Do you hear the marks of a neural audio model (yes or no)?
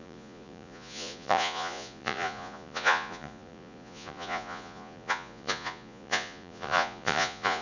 yes